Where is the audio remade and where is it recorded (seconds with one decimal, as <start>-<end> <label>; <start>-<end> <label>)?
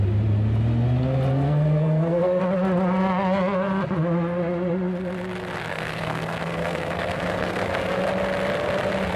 0.0-1.3 recorded; 1.3-2.4 remade; 2.4-5.7 recorded; 5.7-8.0 remade; 8.0-9.2 recorded